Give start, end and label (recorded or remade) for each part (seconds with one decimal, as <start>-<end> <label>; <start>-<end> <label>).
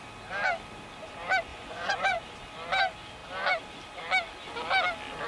0.0-1.5 recorded; 1.5-2.2 remade; 2.2-5.3 recorded